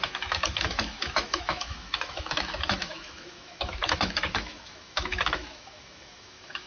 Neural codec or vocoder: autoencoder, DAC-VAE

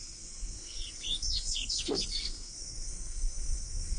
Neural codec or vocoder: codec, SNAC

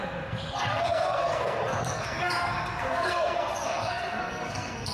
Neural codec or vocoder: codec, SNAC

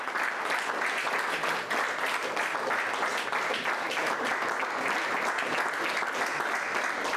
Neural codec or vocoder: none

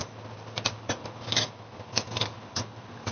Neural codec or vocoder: none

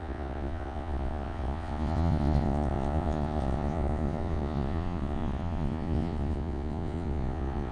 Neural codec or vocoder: vocoder, Vocos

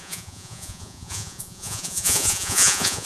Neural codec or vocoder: vocoder, Vocos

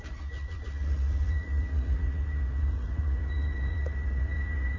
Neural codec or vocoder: vocoder, Vocos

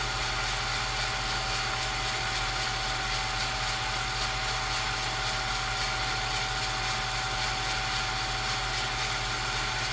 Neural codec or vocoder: none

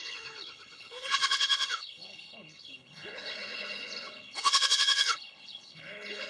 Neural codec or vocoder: codec, HILCodec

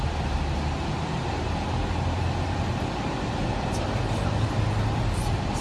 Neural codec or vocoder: none